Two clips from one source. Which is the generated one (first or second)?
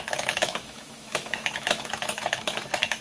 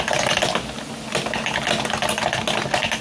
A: first